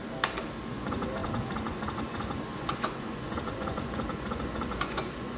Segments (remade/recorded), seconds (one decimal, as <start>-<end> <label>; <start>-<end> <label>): 0.0-0.7 recorded; 0.7-5.4 remade